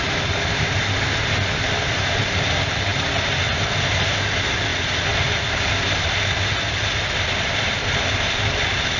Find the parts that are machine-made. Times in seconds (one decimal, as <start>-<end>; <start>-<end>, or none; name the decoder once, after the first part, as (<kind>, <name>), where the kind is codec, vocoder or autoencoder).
none